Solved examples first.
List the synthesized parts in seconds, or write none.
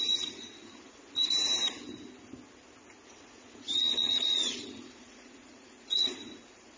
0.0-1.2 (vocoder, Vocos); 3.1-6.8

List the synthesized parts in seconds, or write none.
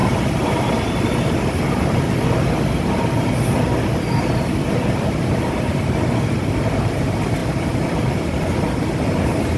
4.3-7.4 (vocoder, BigVGAN v2); 7.9-9.6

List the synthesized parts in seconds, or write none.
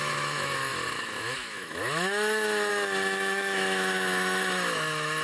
0.0-5.2 (autoencoder, DAC-VAE)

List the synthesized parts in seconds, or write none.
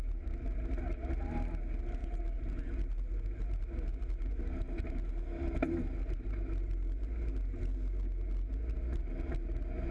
none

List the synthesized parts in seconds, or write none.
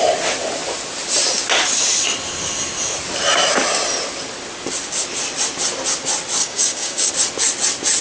6.4-7.1 (codec, DAC)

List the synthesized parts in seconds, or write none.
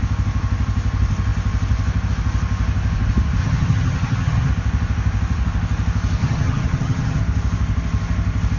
3.4-4.5 (vocoder, HiFi-GAN); 6.2-7.2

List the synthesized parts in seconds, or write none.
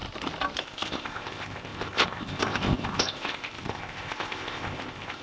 0.6-5.2 (codec, ZipCodec)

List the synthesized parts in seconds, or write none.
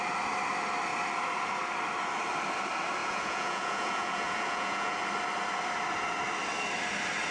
3.0-5.0 (vocoder, Vocos)